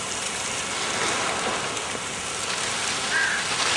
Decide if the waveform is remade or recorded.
recorded